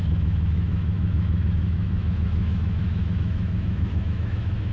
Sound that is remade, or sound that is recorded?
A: remade